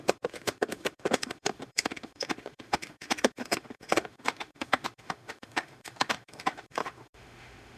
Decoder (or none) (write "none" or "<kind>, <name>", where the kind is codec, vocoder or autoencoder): autoencoder, DAC-VAE